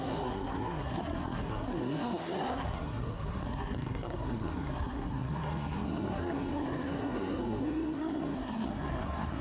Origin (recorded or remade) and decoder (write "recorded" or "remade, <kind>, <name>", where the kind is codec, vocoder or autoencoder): remade, codec, SNAC